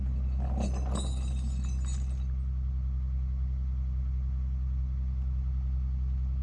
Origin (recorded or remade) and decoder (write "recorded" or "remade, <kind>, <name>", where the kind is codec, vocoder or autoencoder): recorded